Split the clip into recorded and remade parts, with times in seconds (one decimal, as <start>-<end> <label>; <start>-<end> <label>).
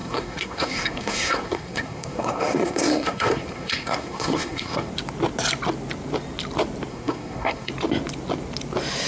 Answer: 0.0-4.9 remade; 4.9-6.9 recorded; 6.9-7.7 remade; 7.7-9.1 recorded